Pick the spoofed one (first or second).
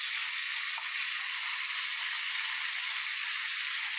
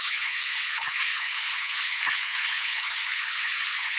second